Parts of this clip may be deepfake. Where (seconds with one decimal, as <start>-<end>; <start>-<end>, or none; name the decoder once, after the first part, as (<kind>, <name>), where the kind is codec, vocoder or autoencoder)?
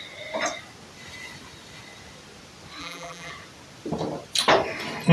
2.8-3.3 (vocoder, BigVGAN v2)